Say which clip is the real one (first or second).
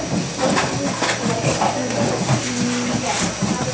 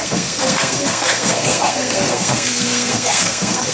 first